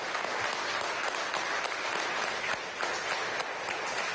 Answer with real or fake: real